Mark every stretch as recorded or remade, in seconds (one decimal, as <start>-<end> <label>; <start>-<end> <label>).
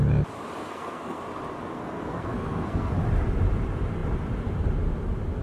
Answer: 0.0-0.6 recorded; 0.6-1.2 remade; 1.2-1.7 recorded; 1.7-2.9 remade; 2.9-5.4 recorded